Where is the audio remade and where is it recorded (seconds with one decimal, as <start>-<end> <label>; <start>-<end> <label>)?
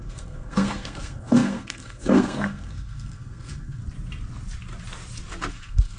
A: 0.0-3.8 remade; 3.8-5.5 recorded; 5.5-6.0 remade